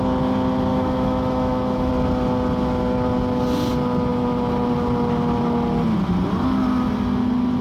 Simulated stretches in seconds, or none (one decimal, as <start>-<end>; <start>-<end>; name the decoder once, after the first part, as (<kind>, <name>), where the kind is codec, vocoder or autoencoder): 0.7-1.9 (autoencoder, DAC-VAE)